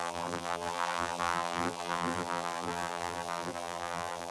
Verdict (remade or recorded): remade